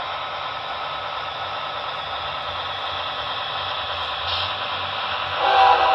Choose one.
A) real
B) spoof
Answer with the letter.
A